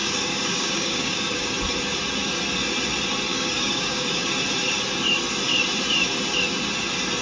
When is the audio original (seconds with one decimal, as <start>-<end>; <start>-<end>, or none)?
1.5-3.3; 4.3-7.2